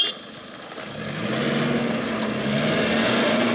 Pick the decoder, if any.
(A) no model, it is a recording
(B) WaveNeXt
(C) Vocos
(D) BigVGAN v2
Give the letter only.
A